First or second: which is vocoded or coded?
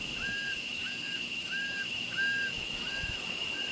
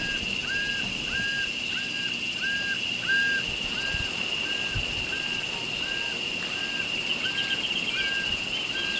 first